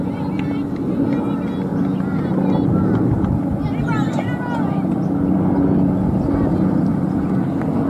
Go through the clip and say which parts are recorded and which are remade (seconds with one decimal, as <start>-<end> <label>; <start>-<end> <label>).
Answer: 0.0-7.9 recorded